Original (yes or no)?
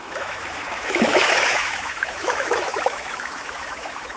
no